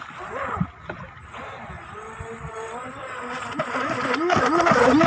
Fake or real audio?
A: real